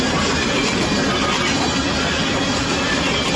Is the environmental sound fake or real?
real